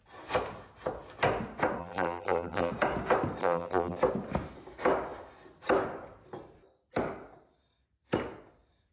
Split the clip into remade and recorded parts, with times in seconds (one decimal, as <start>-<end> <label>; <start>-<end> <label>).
0.0-1.8 recorded; 1.8-2.7 remade; 2.7-3.4 recorded; 3.4-4.0 remade; 4.0-8.9 recorded